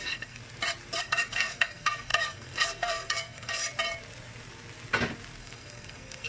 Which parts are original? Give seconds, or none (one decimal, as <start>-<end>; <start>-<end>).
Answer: 0.4-1.0; 3.6-5.4